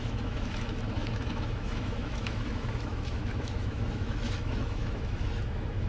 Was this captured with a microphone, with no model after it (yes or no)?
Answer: no